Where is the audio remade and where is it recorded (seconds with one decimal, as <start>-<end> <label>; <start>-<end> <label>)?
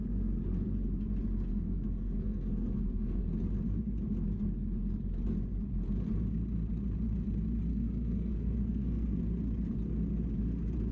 0.0-1.5 recorded; 1.5-3.2 remade; 3.2-7.7 recorded; 7.7-9.2 remade; 9.2-10.9 recorded